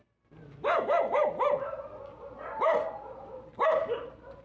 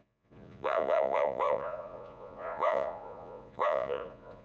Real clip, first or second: first